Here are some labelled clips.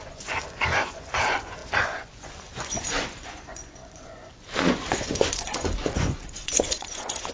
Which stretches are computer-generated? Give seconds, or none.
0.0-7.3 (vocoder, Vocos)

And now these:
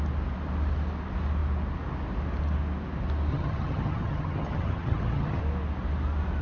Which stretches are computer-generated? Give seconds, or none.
3.3-5.4 (vocoder, HiFi-GAN)

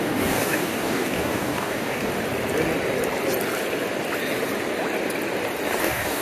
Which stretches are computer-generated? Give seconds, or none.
0.0-2.1 (codec, DAC); 5.8-6.2

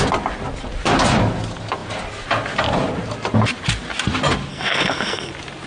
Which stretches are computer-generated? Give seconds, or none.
4.5-5.3 (codec, SNAC)